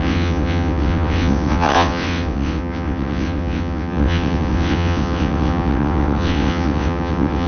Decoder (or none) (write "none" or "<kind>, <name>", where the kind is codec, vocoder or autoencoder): vocoder, WaveNeXt